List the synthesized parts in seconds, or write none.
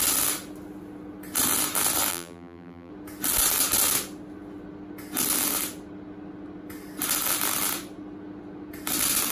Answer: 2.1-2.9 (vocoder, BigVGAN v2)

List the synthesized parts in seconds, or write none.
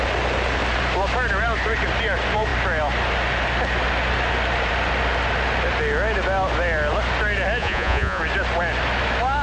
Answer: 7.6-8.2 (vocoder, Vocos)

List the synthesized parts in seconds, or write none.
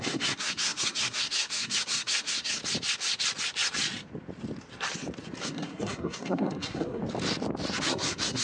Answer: 0.0-2.6 (codec, SNAC); 5.4-7.0; 7.8-8.4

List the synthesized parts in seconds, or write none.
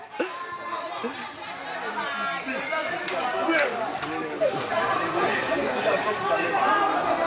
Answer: 2.8-4.7 (codec, DAC); 5.4-6.5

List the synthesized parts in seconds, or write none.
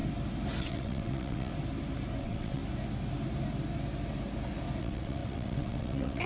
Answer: 0.6-1.5 (vocoder, WaveNeXt); 2.2-2.6; 4.8-6.3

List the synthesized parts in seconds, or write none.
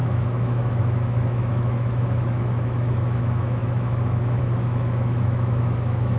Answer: 0.0-6.2 (autoencoder, DAC-VAE)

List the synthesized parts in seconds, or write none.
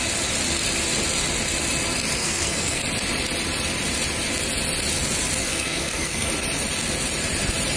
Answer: 2.2-2.8 (codec, SNAC); 5.4-6.3